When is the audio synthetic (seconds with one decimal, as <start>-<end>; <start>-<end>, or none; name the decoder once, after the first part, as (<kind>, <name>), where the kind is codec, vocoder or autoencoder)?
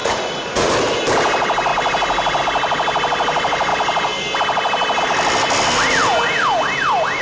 0.0-0.7 (vocoder, Vocos)